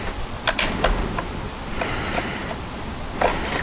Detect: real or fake real